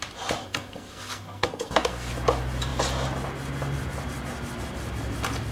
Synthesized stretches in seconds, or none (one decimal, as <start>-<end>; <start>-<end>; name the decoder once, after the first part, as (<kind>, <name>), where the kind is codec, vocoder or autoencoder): 0.4-2.1 (codec, SNAC)

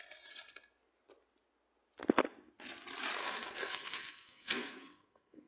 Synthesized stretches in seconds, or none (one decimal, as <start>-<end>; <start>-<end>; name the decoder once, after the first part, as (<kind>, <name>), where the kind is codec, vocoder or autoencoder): 3.2-5.5 (codec, SNAC)

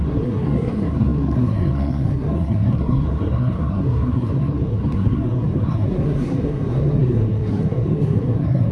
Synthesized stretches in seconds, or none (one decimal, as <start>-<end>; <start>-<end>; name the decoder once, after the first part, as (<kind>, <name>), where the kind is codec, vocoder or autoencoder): 0.0-8.7 (codec, SNAC)

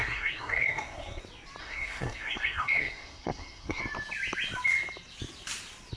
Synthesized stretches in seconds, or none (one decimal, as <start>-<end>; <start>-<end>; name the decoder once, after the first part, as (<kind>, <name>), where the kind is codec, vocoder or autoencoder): 0.0-1.2 (codec, SNAC); 1.6-3.8

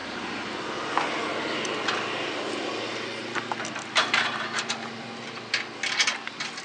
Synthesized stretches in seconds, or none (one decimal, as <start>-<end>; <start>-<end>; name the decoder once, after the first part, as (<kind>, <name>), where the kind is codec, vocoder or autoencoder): none

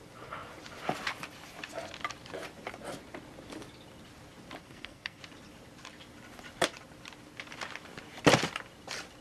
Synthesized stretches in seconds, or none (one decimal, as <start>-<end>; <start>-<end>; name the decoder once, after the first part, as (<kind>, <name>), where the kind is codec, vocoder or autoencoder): 4.6-5.2 (codec, SNAC)